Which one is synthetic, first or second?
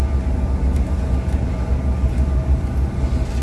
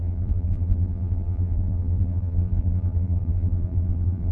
second